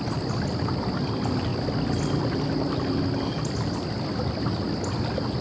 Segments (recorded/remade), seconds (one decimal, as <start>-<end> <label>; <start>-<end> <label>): 0.0-5.4 recorded